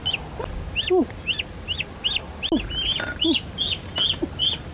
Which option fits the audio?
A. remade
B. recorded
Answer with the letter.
B